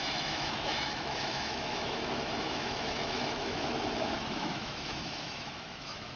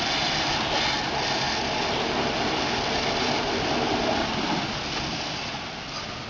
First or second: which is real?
second